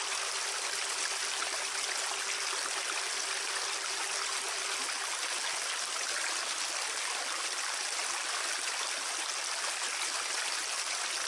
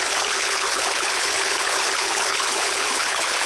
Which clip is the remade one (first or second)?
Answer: second